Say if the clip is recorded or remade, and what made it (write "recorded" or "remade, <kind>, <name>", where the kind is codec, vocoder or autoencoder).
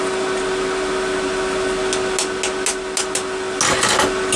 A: recorded